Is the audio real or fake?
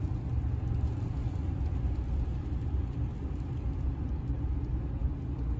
real